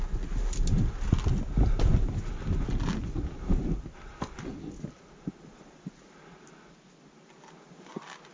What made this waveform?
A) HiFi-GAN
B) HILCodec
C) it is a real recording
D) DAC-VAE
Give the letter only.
C